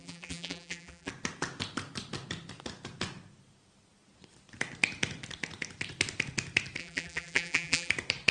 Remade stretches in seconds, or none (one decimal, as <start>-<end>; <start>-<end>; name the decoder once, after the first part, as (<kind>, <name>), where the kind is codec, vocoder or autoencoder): 0.0-1.1 (vocoder, BigVGAN v2); 6.8-7.9